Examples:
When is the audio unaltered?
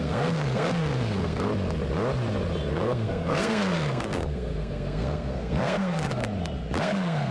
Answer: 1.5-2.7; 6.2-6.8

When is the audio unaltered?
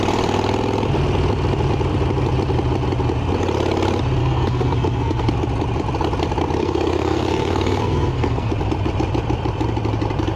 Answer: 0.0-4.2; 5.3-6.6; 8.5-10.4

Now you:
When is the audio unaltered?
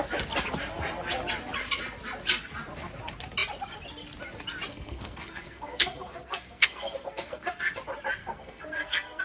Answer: 0.0-4.7; 7.8-8.2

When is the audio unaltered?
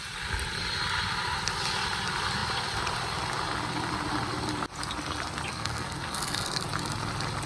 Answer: 0.0-5.5; 6.6-7.5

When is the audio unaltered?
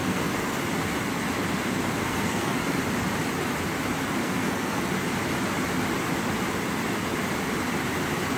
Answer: 0.6-2.0; 2.8-4.2; 4.8-8.4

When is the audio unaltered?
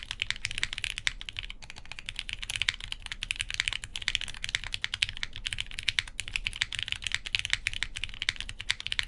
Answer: 0.0-9.1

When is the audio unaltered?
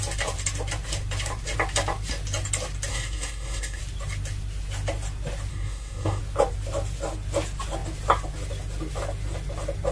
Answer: 0.0-2.9; 3.8-5.5; 6.2-9.9